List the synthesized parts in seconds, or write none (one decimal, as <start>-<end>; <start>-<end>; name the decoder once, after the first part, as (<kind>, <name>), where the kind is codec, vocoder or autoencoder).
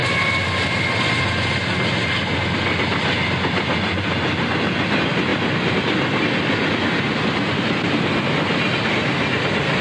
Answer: none